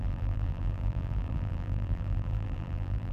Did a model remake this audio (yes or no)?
yes